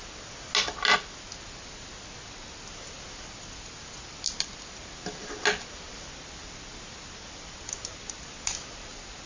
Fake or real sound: real